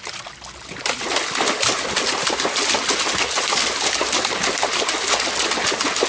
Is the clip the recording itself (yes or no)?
yes